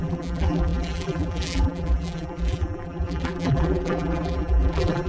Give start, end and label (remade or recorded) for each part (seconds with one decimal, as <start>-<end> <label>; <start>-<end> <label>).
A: 0.0-5.1 remade